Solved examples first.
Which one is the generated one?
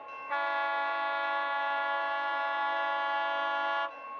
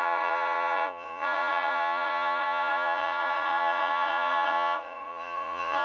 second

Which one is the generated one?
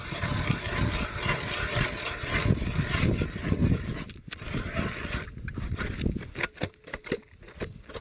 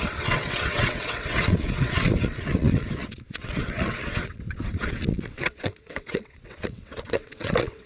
second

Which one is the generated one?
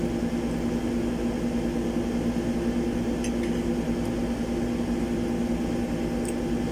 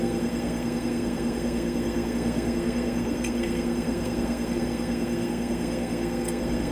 second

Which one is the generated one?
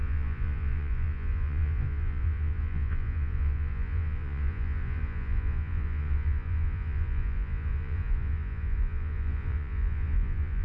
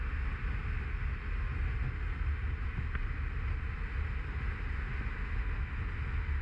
first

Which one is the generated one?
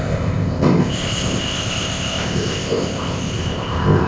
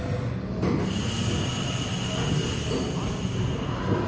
first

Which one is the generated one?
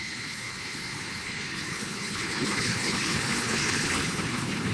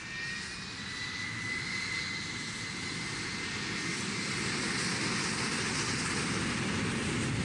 first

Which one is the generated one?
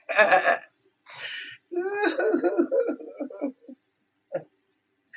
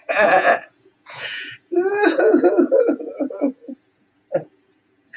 second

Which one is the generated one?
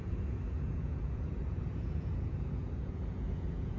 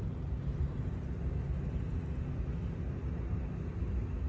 first